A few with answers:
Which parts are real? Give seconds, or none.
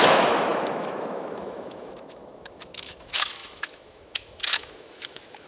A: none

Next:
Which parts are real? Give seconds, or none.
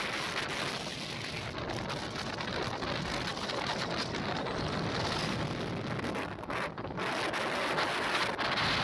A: 0.0-8.8